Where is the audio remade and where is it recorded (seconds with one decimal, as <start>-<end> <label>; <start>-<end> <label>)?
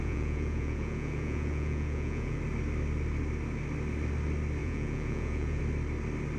0.0-2.4 remade; 2.4-4.6 recorded; 4.6-5.6 remade; 5.6-6.4 recorded